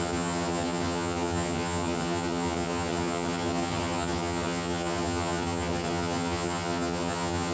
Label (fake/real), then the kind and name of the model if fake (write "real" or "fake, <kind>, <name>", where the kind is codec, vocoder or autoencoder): fake, vocoder, HiFi-GAN